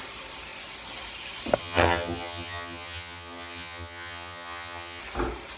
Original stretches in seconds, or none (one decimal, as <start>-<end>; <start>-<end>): 0.0-1.6; 5.0-5.6